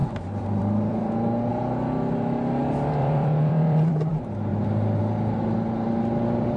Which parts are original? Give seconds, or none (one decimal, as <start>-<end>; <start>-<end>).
1.5-2.6; 4.1-4.5; 5.0-6.6